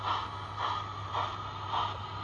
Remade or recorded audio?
recorded